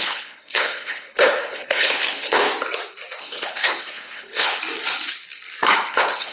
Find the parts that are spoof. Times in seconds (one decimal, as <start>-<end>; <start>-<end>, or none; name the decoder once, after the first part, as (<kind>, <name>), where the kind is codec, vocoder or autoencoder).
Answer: 0.0-2.5 (codec, HILCodec); 3.2-4.6; 5.7-6.3